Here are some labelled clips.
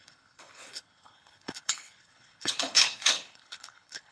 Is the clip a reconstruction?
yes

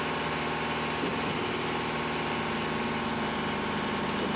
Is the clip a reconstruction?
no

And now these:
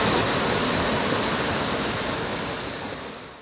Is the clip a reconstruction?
no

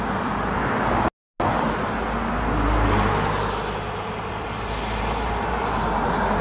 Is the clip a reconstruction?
no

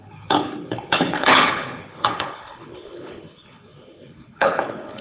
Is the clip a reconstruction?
yes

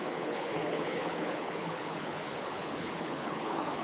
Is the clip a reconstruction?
yes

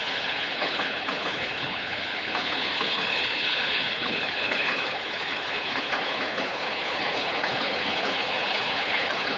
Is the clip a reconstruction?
yes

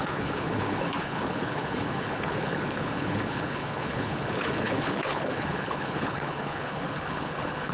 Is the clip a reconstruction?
yes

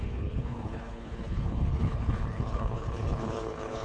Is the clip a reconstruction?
yes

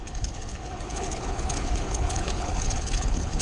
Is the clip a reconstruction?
yes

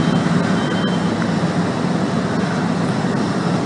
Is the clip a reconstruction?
no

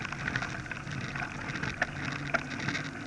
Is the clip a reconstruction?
no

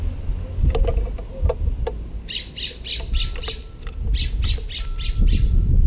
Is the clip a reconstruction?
no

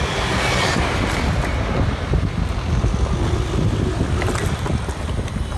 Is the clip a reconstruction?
no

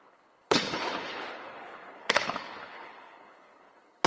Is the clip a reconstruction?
yes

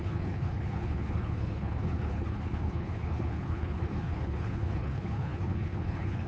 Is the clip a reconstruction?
yes